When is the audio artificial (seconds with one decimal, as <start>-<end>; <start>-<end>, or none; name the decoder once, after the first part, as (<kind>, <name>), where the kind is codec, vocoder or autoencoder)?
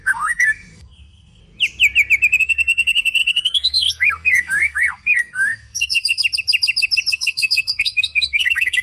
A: 0.0-1.4 (codec, SNAC); 2.4-6.2; 7.1-8.8